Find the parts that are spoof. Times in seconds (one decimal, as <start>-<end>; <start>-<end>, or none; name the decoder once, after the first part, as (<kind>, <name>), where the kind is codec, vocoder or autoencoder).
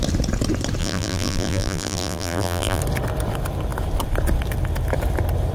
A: 0.8-2.8 (vocoder, BigVGAN v2)